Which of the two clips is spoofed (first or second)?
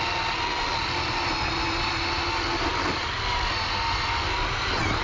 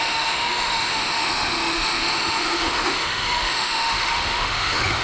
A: second